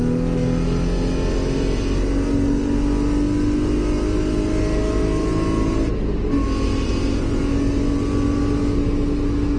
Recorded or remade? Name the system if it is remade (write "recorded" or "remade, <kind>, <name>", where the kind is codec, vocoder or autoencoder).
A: recorded